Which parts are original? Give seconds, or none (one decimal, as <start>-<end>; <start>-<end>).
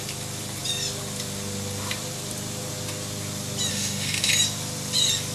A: 0.0-3.7; 4.3-5.3